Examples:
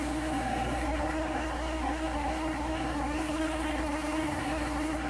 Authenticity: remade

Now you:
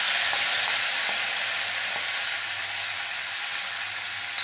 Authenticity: recorded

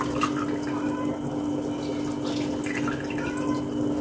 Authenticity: recorded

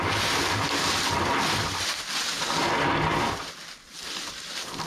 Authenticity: recorded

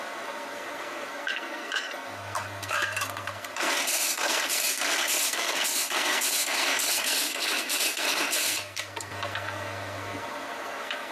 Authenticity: remade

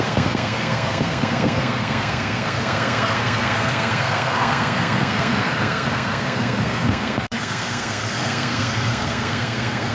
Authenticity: remade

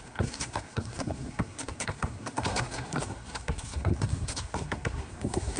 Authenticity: remade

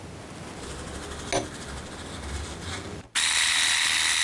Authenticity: recorded